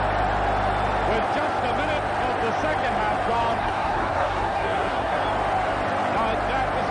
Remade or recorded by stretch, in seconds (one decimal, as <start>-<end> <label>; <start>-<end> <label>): 0.0-3.6 recorded; 3.6-5.2 remade; 5.2-6.9 recorded